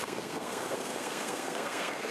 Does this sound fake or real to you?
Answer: fake